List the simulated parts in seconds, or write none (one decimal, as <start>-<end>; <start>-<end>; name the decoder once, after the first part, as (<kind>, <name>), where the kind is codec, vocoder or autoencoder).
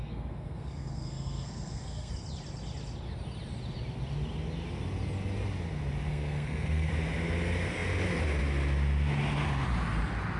0.0-2.1 (codec, SNAC); 6.1-6.9